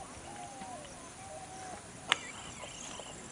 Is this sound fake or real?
real